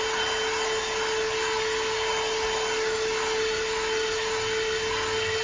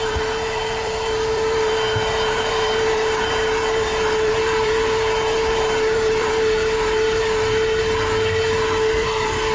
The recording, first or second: first